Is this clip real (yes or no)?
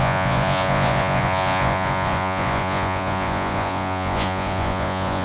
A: no